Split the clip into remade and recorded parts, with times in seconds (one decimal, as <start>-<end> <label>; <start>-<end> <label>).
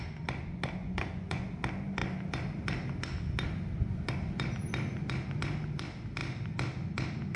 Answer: 0.0-0.8 recorded; 0.8-1.5 remade; 1.5-7.4 recorded